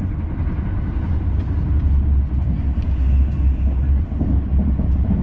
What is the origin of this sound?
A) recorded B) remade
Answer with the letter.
A